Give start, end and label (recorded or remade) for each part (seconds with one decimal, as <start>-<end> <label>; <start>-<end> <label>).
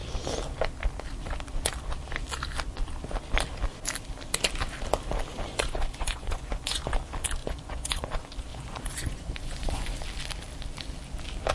0.0-5.5 recorded; 5.5-6.9 remade; 6.9-7.4 recorded; 7.4-8.0 remade; 8.0-8.5 recorded; 8.5-10.0 remade; 10.0-11.5 recorded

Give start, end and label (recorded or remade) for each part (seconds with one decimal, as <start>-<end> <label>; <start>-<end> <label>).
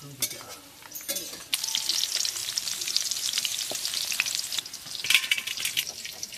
0.0-2.4 recorded; 2.4-4.1 remade; 4.1-6.4 recorded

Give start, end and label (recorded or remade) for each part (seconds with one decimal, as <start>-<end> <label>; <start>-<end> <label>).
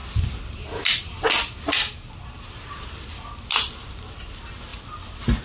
0.0-5.4 recorded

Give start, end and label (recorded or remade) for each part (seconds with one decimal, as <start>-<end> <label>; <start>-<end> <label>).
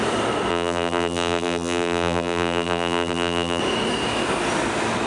0.0-0.5 recorded; 0.5-3.6 remade; 3.6-5.1 recorded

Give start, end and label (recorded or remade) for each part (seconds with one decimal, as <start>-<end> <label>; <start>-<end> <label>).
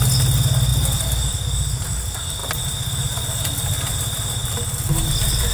0.0-5.5 recorded